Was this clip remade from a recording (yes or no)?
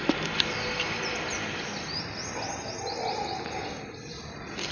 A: no